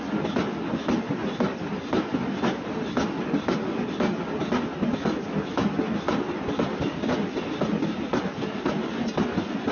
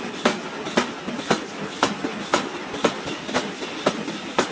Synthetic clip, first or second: second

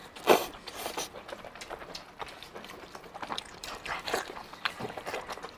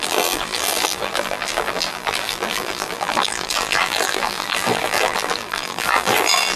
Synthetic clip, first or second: second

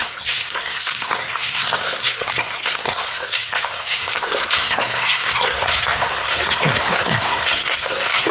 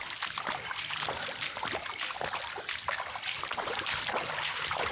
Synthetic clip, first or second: first